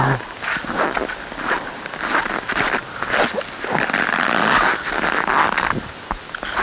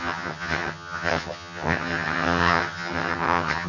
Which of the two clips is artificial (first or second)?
second